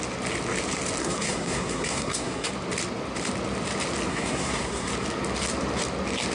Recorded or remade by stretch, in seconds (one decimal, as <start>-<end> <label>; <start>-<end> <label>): 0.0-1.0 recorded; 1.0-2.5 remade; 2.5-4.1 recorded; 4.1-4.9 remade; 4.9-6.3 recorded